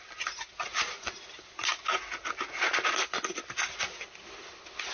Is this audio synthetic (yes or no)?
no